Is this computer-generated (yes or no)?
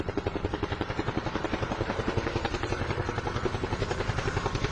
yes